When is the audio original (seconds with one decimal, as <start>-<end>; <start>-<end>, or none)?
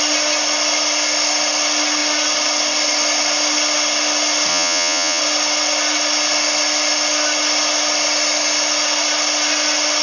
0.0-4.5; 5.2-10.0